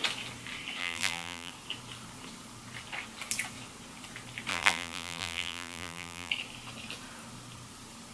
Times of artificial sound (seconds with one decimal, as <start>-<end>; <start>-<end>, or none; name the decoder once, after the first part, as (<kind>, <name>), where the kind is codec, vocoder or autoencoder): 0.8-1.5 (vocoder, BigVGAN v2); 4.5-6.3